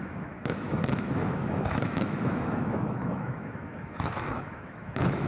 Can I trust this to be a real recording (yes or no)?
no